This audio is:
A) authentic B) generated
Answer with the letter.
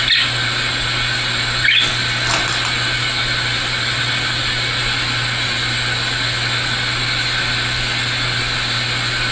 A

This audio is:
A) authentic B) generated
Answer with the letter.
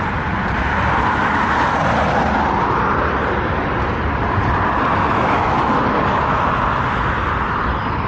A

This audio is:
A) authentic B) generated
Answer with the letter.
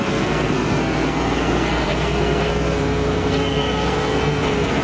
B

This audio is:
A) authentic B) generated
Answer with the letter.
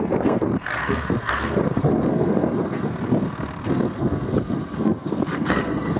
B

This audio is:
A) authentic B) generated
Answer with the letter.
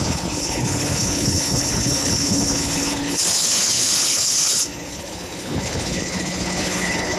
B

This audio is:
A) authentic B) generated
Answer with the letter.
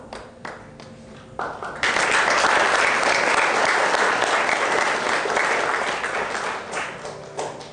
A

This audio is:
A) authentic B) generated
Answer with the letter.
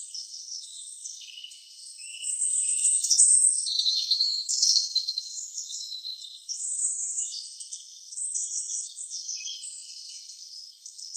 B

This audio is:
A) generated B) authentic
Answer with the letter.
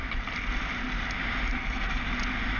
B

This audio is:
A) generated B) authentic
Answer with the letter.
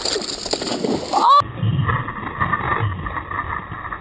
B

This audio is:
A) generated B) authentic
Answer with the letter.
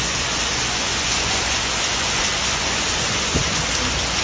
A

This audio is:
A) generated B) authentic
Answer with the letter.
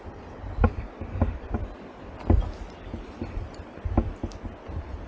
B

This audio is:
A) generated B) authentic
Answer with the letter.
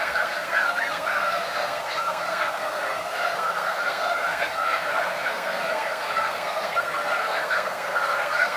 A